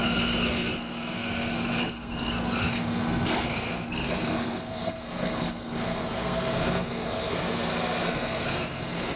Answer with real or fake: fake